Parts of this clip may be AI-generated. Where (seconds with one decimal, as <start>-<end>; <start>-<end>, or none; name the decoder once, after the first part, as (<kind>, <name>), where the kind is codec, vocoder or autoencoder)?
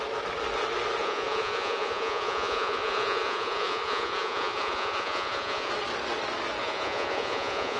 1.0-5.7 (vocoder, Vocos); 6.6-7.8